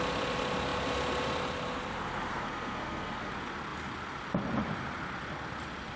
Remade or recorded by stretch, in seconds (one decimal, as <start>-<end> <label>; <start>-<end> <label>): 0.0-2.3 recorded; 2.3-3.3 remade; 3.3-6.0 recorded